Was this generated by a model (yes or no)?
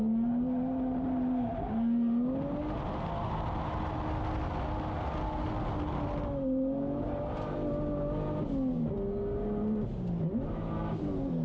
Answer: no